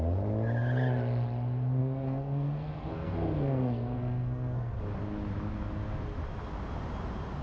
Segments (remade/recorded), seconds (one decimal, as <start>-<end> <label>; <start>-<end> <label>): 0.0-1.8 recorded; 1.8-4.8 remade; 4.8-7.4 recorded